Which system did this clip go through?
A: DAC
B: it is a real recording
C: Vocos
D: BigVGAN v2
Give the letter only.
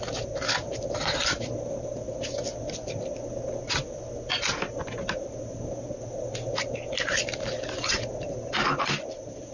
B